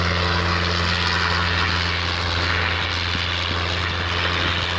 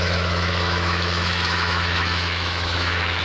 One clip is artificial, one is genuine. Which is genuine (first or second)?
first